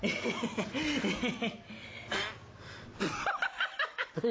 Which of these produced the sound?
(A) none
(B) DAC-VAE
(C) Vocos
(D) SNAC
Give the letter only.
A